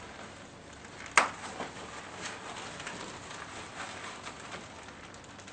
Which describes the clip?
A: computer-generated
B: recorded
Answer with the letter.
B